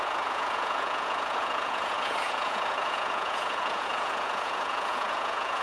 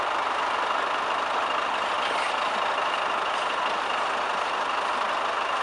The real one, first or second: second